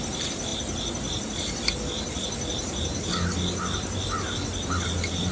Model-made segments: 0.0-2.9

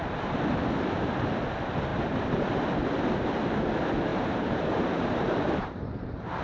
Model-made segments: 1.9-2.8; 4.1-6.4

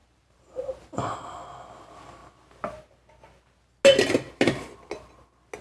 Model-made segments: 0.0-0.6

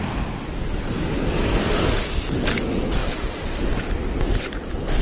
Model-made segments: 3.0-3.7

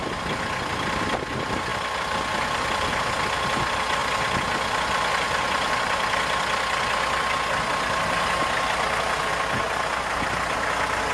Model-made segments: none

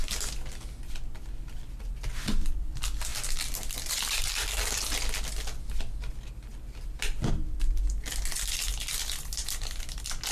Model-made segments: none